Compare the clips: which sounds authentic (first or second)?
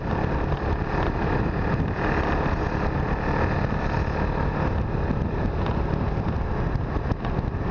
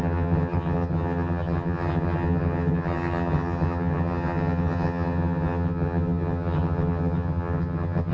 first